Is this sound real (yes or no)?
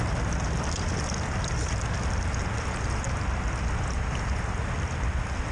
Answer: yes